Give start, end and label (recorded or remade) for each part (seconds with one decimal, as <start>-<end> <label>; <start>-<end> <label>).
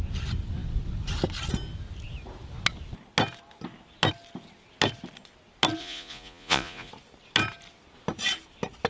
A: 0.0-5.8 recorded; 5.8-6.9 remade; 6.9-8.9 recorded